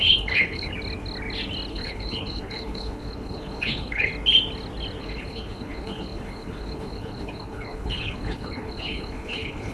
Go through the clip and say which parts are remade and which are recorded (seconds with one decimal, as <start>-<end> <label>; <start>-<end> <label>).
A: 0.0-0.7 remade; 0.7-1.7 recorded; 1.7-4.1 remade; 4.1-5.0 recorded; 5.0-9.7 remade